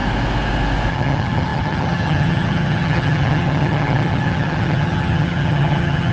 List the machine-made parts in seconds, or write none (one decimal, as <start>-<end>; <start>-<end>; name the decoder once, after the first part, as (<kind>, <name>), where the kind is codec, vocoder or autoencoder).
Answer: 0.9-6.1 (vocoder, HiFi-GAN)